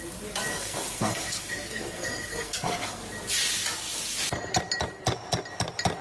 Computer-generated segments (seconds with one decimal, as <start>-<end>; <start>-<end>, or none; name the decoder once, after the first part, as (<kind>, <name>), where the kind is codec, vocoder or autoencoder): 0.5-3.0 (codec, SNAC)